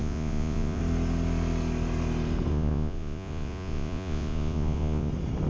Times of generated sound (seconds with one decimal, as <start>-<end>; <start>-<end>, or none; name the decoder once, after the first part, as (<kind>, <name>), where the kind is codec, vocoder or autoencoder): 0.0-0.8 (vocoder, Vocos); 2.5-5.1